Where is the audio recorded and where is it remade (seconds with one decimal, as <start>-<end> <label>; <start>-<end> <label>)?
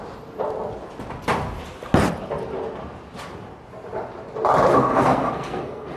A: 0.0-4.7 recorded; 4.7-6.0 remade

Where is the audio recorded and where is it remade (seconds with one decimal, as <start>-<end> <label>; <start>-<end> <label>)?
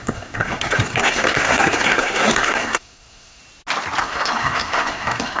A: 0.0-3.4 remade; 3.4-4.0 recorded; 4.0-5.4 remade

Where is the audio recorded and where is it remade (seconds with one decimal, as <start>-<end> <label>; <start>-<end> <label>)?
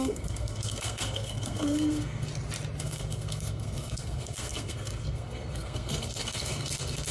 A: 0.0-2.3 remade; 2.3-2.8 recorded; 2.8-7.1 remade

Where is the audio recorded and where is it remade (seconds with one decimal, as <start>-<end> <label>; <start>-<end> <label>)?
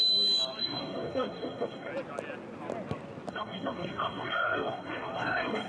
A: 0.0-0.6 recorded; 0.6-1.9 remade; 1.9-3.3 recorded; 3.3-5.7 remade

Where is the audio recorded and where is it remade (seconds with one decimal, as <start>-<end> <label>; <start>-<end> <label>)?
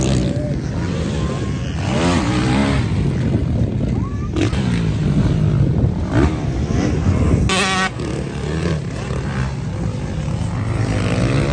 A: 0.0-11.5 recorded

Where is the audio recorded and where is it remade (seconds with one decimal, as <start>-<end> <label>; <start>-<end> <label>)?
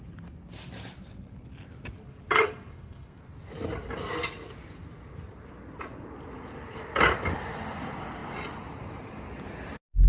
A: 0.0-2.7 recorded; 2.7-3.2 remade; 3.2-10.1 recorded